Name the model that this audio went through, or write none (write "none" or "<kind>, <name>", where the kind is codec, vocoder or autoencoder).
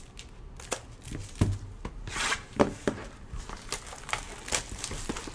none